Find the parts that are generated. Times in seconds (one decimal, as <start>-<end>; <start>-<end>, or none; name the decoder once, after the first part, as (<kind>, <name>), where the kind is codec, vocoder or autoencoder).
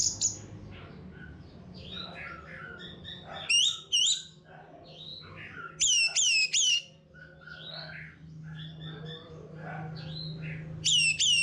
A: none